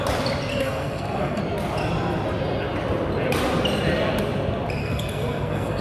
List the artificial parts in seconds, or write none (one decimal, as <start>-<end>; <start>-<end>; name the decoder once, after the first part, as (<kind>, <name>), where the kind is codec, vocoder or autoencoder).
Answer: 0.5-1.4 (codec, SNAC); 4.8-5.8

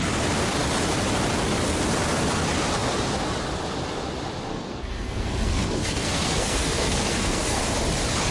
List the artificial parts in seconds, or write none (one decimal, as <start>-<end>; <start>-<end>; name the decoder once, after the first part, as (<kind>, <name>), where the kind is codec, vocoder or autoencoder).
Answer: 4.5-7.6 (codec, SNAC)

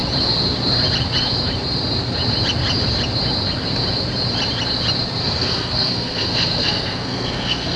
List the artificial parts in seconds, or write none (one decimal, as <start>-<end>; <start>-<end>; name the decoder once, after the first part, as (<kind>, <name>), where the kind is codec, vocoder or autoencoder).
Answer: 5.2-7.8 (codec, SNAC)

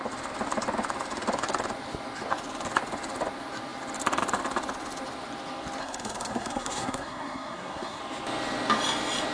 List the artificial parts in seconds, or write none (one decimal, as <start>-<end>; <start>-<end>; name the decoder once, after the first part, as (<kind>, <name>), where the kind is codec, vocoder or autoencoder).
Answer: 5.8-8.0 (codec, SNAC)

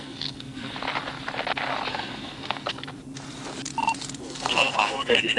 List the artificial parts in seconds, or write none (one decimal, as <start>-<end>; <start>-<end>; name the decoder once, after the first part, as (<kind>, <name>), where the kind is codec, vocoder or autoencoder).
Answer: 0.0-0.7 (codec, SNAC); 1.9-2.9; 4.2-5.4

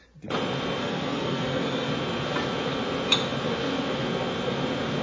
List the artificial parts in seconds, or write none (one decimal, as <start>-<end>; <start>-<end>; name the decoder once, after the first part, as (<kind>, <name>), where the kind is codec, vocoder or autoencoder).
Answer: 0.8-1.9 (codec, SNAC)

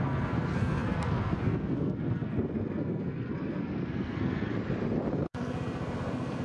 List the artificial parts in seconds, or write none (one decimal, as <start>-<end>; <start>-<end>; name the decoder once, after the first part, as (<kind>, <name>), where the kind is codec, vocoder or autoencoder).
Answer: 0.0-4.5 (codec, SNAC); 5.1-6.4

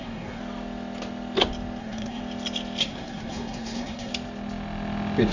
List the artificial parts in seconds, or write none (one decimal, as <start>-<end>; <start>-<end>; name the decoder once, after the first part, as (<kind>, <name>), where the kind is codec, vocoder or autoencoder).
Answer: 0.0-0.4 (codec, SNAC); 1.8-2.2; 2.8-4.1